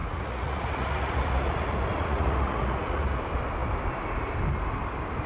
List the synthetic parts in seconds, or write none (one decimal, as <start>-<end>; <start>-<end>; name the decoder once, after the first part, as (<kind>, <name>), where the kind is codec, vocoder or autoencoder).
0.0-3.2 (vocoder, Vocos)